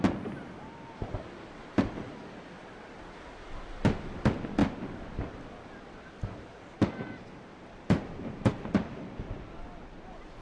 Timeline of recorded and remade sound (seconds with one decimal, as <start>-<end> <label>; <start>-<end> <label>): 0.0-10.4 recorded